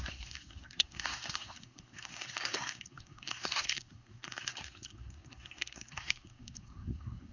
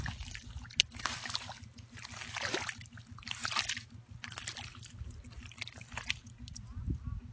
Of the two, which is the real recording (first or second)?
second